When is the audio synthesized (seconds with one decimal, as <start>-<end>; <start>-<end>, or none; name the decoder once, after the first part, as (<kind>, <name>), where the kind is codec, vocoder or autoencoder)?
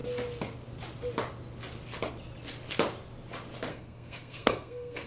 3.7-5.1 (codec, SNAC)